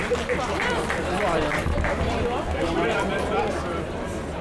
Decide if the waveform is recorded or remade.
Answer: remade